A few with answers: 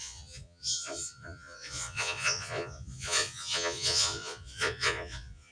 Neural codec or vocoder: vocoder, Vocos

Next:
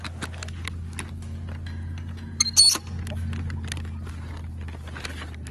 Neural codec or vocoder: none